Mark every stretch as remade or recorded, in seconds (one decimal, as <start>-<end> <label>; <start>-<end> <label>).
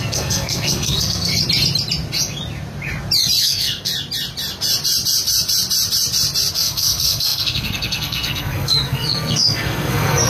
0.0-1.3 remade; 1.3-3.4 recorded; 3.4-3.9 remade; 3.9-6.5 recorded; 6.5-10.3 remade